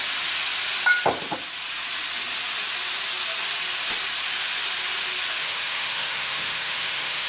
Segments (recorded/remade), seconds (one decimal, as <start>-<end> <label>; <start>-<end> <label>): 0.0-5.4 recorded; 5.4-7.3 remade